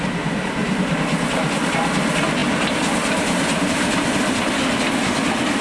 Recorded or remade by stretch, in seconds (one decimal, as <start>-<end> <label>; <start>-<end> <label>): 0.0-5.6 recorded